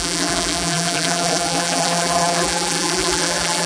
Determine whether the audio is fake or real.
fake